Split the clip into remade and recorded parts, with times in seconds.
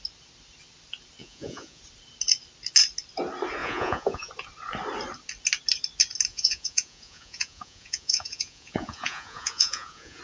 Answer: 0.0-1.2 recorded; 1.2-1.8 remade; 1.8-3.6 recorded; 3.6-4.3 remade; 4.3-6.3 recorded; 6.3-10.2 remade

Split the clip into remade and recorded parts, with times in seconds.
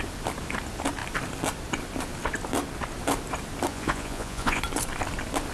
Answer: 0.0-3.7 recorded; 3.7-4.6 remade; 4.6-5.5 recorded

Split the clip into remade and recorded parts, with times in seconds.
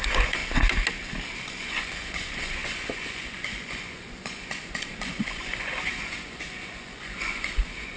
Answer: 0.0-0.4 remade; 0.4-1.4 recorded; 1.4-8.0 remade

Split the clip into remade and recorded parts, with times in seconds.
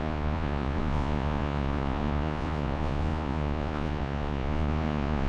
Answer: 0.0-5.3 remade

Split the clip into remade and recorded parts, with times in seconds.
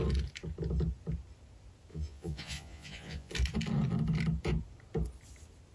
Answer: 0.0-1.9 recorded; 1.9-3.3 remade; 3.3-5.7 recorded